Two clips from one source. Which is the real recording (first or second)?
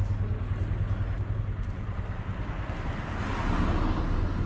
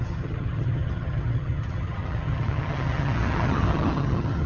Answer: first